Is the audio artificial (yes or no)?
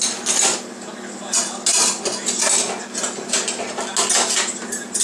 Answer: no